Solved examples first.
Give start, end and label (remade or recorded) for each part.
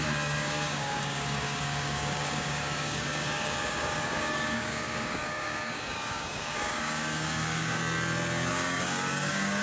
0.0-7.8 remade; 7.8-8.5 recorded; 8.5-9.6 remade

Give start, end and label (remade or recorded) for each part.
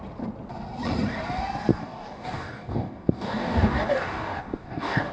0.0-1.7 recorded; 1.7-5.1 remade